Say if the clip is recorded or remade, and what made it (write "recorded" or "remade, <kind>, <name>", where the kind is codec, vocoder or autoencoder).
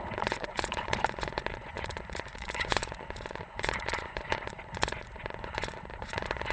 remade, vocoder, Vocos